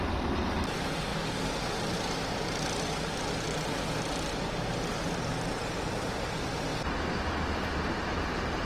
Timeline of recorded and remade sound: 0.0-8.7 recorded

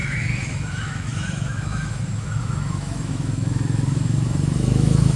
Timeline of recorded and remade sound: 0.0-5.2 remade